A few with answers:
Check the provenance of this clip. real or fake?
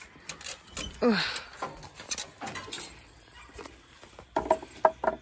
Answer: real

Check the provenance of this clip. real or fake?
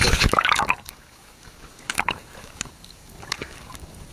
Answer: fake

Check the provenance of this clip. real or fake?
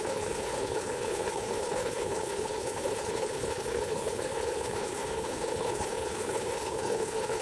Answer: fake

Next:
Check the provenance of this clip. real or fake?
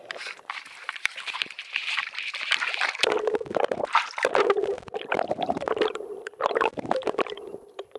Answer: fake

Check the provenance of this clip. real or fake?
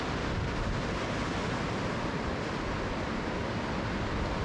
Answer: real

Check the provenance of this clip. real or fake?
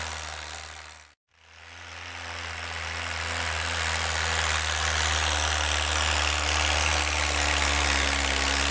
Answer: real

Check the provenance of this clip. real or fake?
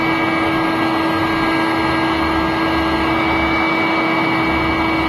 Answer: real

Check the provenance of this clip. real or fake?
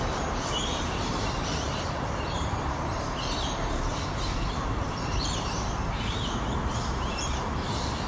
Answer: fake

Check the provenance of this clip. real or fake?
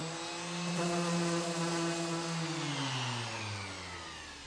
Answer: real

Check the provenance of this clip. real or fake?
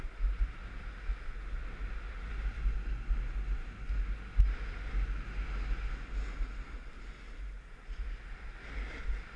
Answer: real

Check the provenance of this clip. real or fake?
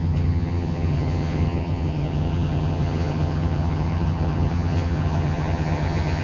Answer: fake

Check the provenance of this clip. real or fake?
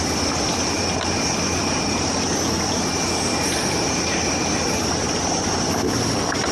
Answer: real